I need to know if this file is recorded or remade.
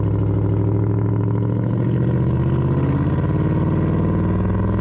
recorded